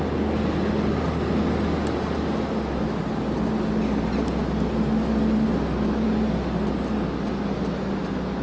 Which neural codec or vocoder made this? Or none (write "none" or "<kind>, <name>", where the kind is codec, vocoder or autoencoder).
none